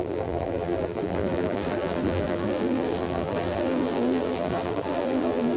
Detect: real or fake fake